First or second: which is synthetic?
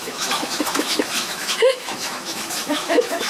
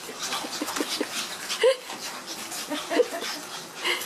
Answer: first